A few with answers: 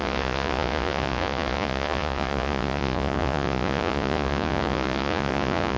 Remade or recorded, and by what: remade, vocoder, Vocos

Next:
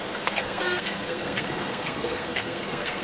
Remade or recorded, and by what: remade, codec, SNAC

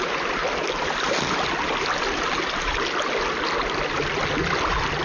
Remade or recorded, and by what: recorded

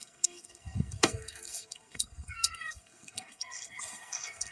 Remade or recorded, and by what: remade, codec, SNAC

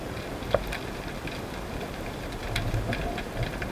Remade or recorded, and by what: recorded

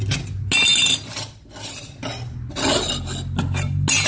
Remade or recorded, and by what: recorded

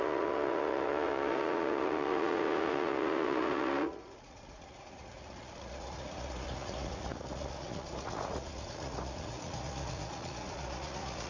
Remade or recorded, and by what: remade, vocoder, Vocos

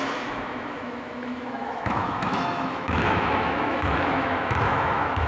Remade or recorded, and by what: remade, autoencoder, DAC-VAE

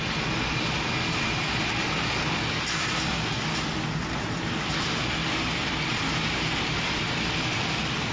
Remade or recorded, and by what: recorded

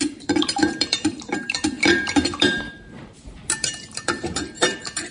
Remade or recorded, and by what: remade, vocoder, BigVGAN v2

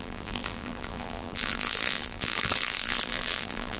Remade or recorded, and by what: remade, vocoder, BigVGAN v2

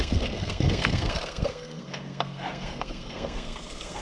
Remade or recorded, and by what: remade, codec, SNAC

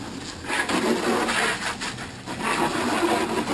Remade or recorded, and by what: recorded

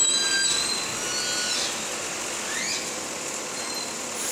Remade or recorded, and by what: recorded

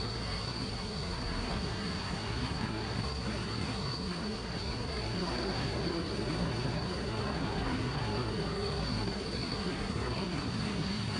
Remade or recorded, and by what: remade, codec, SNAC